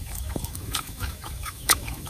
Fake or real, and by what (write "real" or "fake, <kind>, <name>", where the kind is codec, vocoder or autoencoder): fake, autoencoder, DAC-VAE